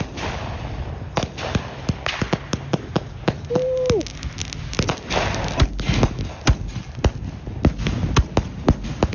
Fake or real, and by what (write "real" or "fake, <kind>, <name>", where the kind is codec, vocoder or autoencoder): real